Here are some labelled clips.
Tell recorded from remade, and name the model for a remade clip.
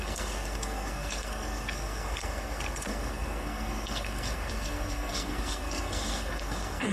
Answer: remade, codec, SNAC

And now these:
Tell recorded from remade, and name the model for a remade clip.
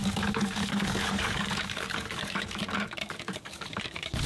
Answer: remade, codec, DAC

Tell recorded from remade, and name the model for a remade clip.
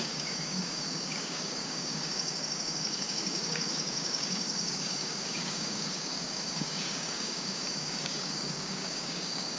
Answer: remade, codec, DAC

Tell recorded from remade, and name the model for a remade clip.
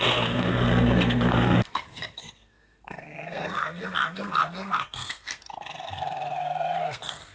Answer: remade, codec, SNAC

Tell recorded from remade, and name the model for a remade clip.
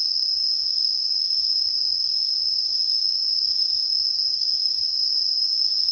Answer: recorded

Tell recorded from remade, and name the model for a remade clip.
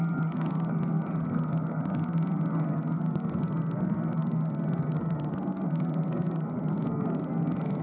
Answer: remade, codec, SNAC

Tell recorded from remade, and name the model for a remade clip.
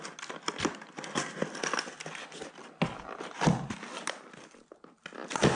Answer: recorded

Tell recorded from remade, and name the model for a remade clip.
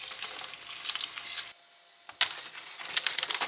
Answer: recorded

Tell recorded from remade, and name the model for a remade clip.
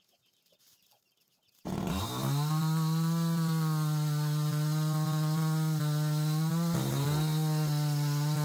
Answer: recorded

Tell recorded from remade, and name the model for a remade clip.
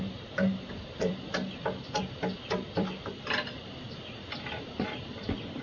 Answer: remade, vocoder, BigVGAN v2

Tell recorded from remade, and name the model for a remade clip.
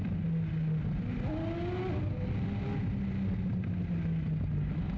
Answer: recorded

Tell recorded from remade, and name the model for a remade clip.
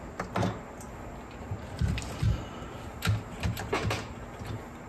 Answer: recorded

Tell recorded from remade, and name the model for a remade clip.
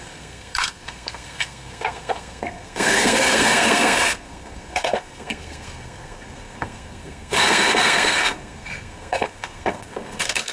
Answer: remade, codec, SNAC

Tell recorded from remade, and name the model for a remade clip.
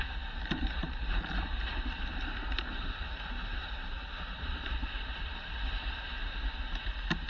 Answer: recorded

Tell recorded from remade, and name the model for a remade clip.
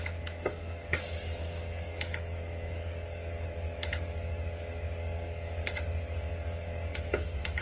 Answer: remade, codec, DAC